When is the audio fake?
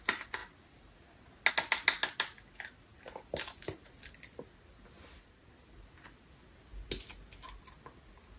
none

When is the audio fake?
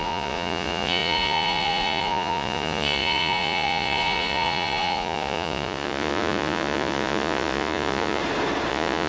0.0-8.2 (vocoder, Vocos); 8.7-9.1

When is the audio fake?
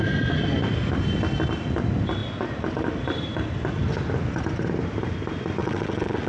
5.6-6.3 (vocoder, WaveNeXt)